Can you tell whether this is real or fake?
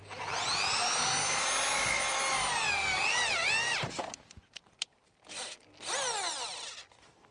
real